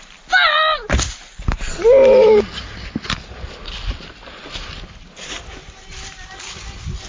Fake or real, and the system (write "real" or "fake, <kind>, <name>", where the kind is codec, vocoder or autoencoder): real